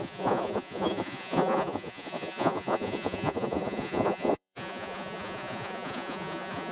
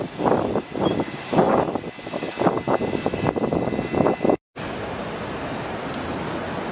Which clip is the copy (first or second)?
first